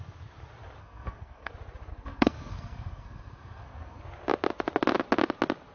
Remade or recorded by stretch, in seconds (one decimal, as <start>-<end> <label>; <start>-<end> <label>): 0.0-0.8 recorded; 0.8-1.5 remade; 1.5-1.9 recorded; 1.9-4.0 remade; 4.0-5.7 recorded